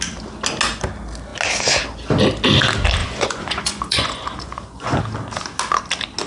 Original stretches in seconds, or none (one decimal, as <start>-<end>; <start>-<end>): 0.0-3.0; 5.0-6.3